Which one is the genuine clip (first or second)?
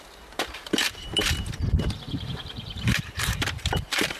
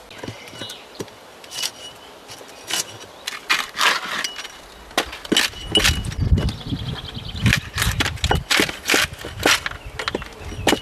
second